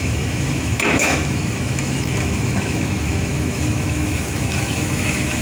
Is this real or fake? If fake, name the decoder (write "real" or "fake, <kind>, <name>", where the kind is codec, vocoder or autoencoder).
fake, autoencoder, DAC-VAE